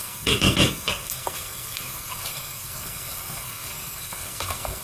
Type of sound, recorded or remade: remade